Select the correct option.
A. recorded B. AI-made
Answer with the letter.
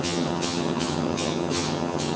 B